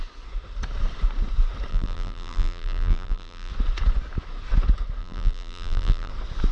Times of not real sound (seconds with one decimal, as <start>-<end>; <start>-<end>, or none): 1.7-3.5; 5.0-6.1